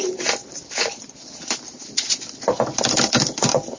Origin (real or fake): real